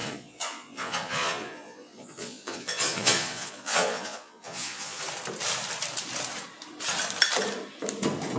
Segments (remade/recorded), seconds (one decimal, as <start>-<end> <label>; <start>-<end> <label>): 0.0-5.0 remade; 5.0-8.4 recorded